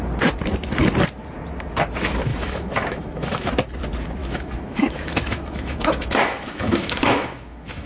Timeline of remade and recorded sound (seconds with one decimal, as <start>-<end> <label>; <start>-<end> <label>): 0.0-2.3 recorded; 2.3-3.5 remade; 3.5-4.2 recorded; 4.2-7.9 remade